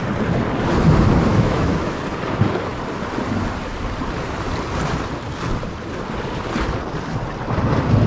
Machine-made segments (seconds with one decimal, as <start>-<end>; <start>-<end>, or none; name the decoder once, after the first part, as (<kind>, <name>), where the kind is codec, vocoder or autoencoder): 1.3-2.0 (autoencoder, DAC-VAE)